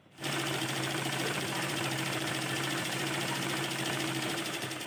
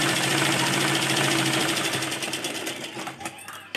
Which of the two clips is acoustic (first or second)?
second